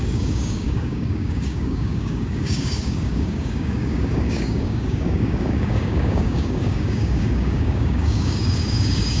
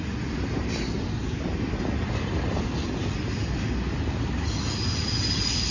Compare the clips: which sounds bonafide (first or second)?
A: second